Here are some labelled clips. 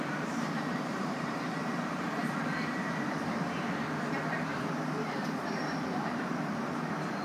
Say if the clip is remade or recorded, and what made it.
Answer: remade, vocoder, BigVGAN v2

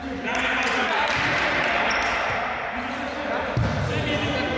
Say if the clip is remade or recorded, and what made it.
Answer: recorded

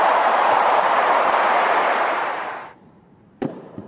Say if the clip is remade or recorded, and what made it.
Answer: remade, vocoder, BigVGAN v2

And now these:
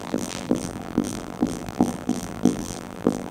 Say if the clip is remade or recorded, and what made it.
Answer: remade, vocoder, BigVGAN v2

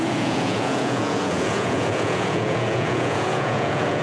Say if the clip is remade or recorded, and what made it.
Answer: remade, vocoder, Vocos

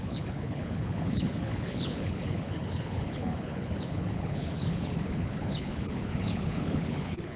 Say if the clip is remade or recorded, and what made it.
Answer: remade, codec, HILCodec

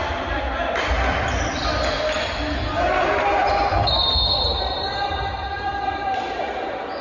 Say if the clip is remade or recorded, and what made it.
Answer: recorded